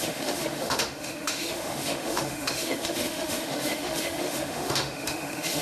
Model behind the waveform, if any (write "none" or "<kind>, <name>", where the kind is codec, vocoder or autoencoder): autoencoder, DAC-VAE